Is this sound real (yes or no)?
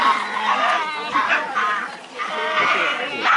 yes